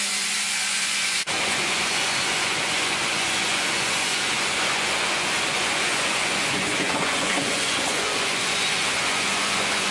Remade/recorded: remade